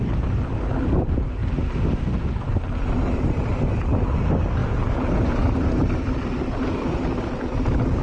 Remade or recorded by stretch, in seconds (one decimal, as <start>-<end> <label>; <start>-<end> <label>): 0.0-8.0 recorded